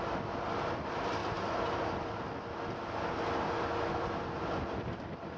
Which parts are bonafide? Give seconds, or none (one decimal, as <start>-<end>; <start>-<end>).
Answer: 0.0-5.4